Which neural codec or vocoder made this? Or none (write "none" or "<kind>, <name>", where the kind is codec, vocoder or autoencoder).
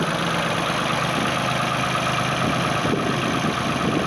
none